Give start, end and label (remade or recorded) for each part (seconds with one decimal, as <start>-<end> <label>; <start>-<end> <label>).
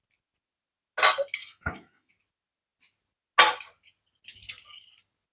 0.0-1.4 recorded; 1.4-2.1 remade; 2.1-5.3 recorded